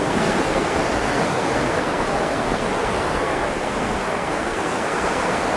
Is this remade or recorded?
remade